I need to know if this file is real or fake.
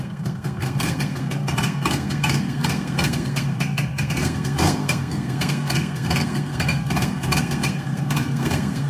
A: fake